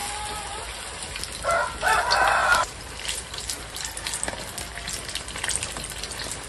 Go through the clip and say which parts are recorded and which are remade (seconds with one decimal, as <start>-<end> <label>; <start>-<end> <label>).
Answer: 0.0-2.4 recorded; 2.4-3.6 remade; 3.6-6.5 recorded